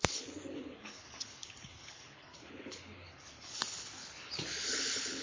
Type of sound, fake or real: fake